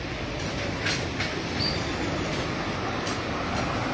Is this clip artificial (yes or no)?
no